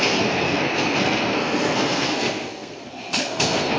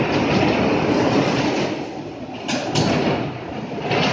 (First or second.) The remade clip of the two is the first